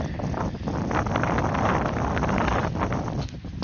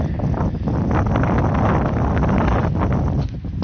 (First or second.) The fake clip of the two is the first